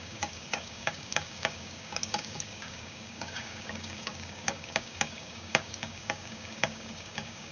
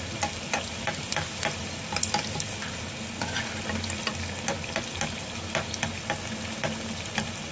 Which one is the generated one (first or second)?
first